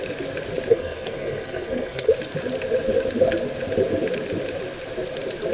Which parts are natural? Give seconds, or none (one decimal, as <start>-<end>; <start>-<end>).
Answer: 0.0-0.7; 2.1-5.5